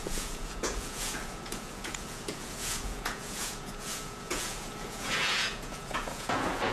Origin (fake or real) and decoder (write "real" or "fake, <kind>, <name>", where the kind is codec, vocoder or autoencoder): fake, vocoder, Vocos